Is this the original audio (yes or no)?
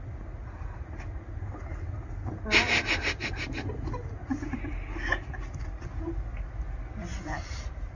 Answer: yes